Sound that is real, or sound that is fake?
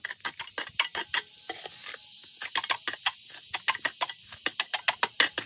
real